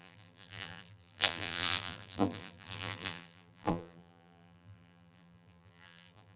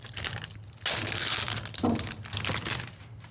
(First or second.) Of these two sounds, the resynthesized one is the first